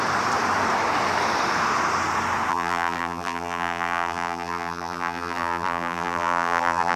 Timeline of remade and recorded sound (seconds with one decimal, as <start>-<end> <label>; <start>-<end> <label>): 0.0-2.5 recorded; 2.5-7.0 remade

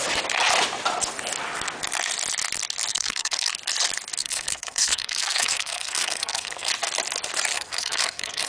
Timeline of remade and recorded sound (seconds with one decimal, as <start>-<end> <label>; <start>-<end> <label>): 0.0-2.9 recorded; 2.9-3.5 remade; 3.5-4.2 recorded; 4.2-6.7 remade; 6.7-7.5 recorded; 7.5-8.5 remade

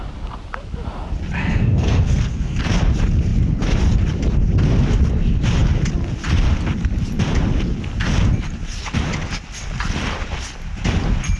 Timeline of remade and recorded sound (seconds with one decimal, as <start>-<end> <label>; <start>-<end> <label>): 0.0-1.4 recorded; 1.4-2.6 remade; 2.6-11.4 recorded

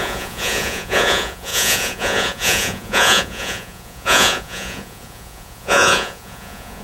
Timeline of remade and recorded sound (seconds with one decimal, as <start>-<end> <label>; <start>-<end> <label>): 0.0-6.8 remade

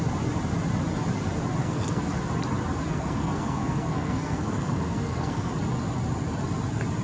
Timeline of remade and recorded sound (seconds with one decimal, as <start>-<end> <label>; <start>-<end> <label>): 0.0-1.6 recorded; 1.6-2.1 remade; 2.1-2.9 recorded; 2.9-5.5 remade; 5.5-7.0 recorded

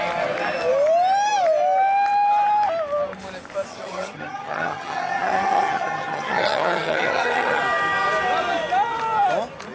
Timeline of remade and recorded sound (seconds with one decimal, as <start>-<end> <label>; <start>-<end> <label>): 0.0-3.7 recorded; 3.7-7.6 remade; 7.6-9.7 recorded

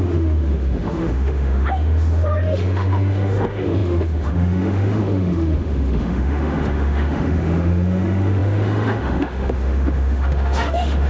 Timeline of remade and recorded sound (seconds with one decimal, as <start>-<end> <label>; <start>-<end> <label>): 0.0-11.1 remade

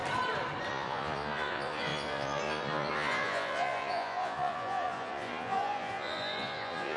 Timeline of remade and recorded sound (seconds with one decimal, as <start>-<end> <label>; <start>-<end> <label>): 0.0-0.7 recorded; 0.7-7.0 remade